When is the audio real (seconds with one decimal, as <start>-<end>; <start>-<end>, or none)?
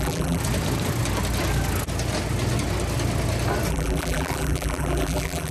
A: 0.4-3.7